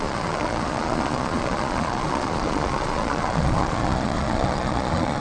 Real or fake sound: fake